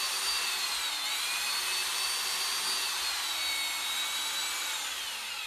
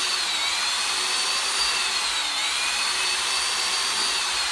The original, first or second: first